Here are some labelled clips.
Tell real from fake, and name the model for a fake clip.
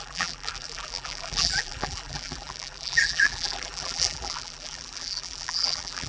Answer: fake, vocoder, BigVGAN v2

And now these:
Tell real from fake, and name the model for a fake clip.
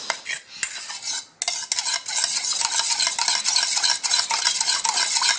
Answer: real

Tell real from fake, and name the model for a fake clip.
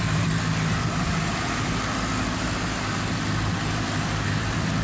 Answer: fake, vocoder, BigVGAN v2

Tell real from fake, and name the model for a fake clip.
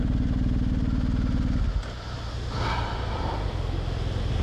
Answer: real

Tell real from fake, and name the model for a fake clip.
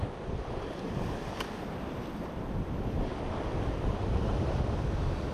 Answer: fake, vocoder, BigVGAN v2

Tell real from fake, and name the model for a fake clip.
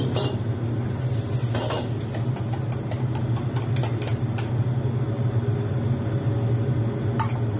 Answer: real